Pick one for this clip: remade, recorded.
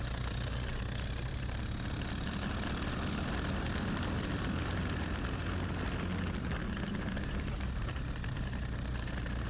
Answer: recorded